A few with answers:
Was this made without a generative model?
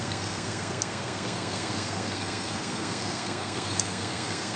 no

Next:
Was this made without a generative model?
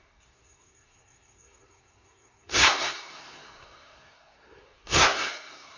no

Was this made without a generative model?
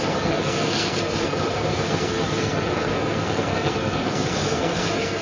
no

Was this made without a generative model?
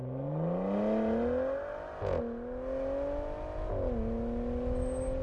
yes